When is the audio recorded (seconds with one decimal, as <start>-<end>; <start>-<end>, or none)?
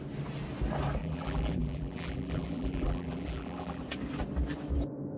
0.0-1.0; 3.8-5.2